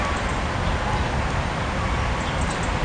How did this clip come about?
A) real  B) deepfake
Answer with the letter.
A